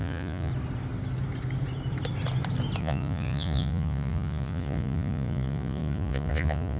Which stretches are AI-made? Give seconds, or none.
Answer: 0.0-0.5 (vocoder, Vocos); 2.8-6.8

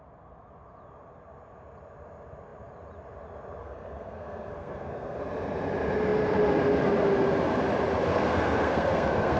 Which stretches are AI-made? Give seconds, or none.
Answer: 3.6-5.2 (codec, SNAC); 8.1-9.4